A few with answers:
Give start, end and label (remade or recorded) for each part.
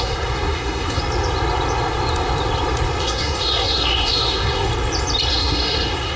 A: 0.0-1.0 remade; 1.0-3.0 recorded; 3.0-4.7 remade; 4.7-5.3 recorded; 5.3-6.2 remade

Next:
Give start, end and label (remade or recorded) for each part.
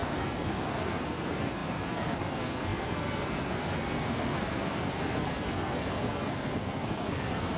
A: 0.0-7.6 remade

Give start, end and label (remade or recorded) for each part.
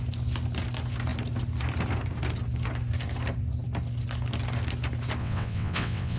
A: 0.0-5.2 recorded; 5.2-6.2 remade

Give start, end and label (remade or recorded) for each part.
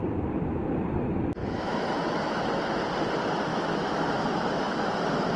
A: 0.0-1.4 recorded; 1.4-2.5 remade; 2.5-3.5 recorded; 3.5-4.9 remade; 4.9-5.4 recorded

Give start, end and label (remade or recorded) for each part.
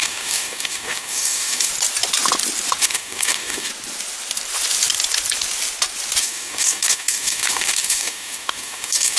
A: 0.0-1.7 remade; 1.7-2.8 recorded; 2.8-3.7 remade; 3.7-6.2 recorded; 6.2-9.2 remade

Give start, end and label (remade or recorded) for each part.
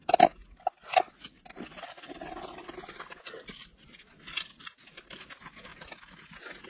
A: 0.0-6.7 recorded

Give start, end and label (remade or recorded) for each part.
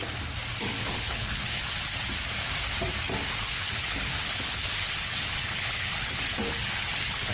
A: 0.0-0.6 recorded; 0.6-1.6 remade; 1.6-3.4 recorded; 3.4-7.3 remade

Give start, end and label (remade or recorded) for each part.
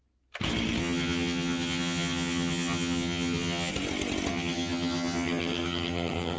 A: 0.0-0.8 recorded; 0.8-3.7 remade; 3.7-4.3 recorded; 4.3-6.4 remade